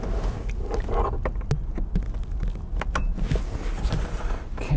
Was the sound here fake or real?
real